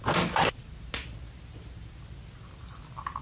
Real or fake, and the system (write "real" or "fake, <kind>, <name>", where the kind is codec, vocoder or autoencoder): real